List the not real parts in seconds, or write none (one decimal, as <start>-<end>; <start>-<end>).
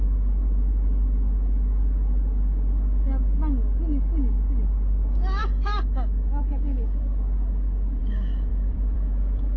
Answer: 8.5-9.6